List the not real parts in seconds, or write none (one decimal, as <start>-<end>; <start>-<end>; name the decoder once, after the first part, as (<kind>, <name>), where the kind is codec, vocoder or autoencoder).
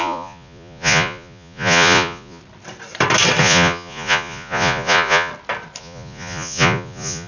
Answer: 0.0-2.4 (vocoder, Vocos); 3.4-5.3; 5.8-7.3